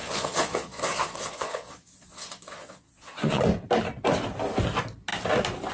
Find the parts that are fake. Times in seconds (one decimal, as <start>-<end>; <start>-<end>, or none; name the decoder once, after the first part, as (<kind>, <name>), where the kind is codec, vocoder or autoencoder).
0.0-3.4 (vocoder, Vocos)